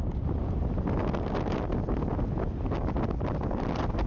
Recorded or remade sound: recorded